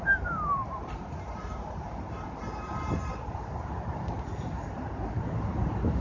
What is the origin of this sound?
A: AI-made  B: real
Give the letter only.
A